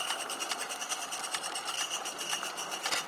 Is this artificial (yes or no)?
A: no